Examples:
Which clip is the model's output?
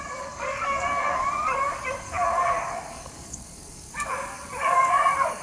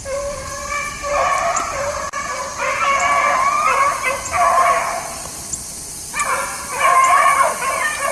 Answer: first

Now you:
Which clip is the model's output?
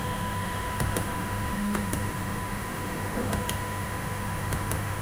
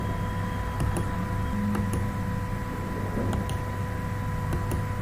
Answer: first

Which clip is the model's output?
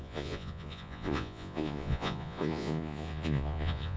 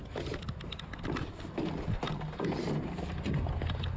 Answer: first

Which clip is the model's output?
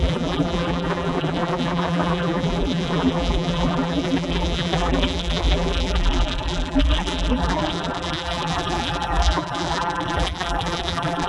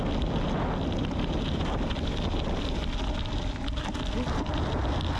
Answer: first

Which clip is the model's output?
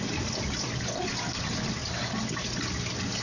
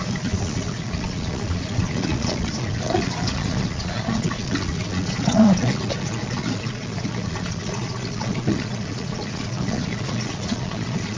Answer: second